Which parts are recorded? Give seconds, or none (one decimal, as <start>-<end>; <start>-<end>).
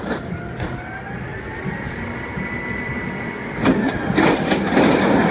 0.0-5.3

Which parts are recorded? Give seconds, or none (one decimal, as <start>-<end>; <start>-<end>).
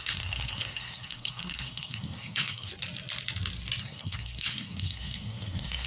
2.7-3.8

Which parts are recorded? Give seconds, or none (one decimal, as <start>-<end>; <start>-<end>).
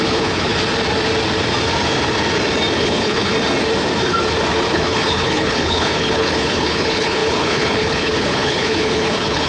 0.5-2.8; 3.3-4.7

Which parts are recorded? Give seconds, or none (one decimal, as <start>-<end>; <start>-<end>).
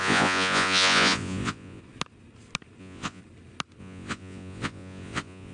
1.8-2.8; 3.2-3.8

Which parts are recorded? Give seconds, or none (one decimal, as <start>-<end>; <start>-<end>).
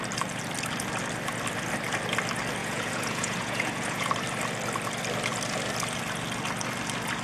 0.0-2.6; 4.1-7.2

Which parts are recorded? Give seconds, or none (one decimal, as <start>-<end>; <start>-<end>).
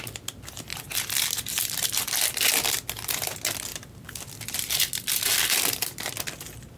0.0-0.7; 2.1-3.7; 4.7-6.8